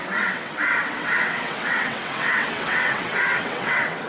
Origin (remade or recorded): remade